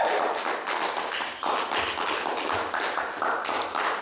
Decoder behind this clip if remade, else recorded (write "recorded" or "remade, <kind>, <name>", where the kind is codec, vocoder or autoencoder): recorded